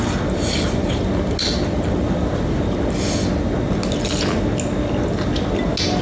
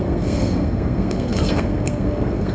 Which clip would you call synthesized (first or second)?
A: second